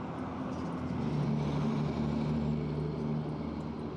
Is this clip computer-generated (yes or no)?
no